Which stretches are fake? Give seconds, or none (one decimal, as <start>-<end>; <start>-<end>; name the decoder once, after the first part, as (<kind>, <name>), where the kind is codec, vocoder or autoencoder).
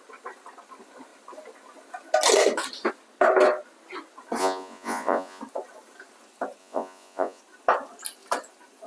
4.4-5.4 (vocoder, Vocos); 6.6-7.4